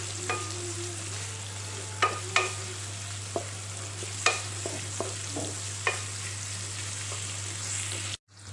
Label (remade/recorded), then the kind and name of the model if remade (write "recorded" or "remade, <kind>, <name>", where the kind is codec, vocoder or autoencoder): recorded